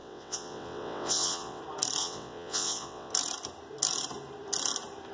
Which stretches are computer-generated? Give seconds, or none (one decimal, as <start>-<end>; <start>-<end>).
0.0-1.6; 2.0-3.1